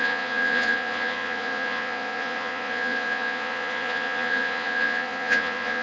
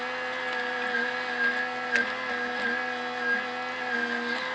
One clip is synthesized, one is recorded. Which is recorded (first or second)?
second